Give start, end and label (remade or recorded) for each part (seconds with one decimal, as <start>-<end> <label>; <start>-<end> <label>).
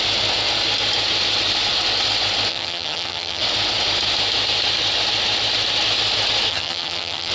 0.0-2.5 recorded; 2.5-3.4 remade; 3.4-6.5 recorded; 6.5-7.3 remade